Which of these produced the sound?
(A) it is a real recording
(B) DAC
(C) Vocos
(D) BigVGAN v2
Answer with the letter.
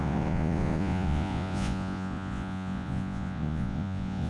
C